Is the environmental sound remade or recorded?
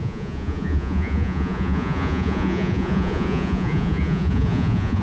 remade